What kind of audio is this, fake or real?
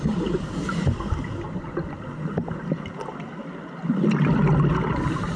real